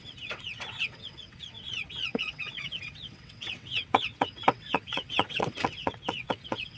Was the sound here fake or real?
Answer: fake